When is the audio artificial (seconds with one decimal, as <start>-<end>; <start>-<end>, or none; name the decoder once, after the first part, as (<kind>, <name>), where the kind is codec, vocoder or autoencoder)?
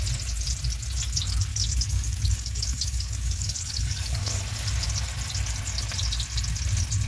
1.5-4.4 (codec, DAC)